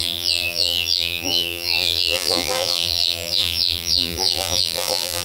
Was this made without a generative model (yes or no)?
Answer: no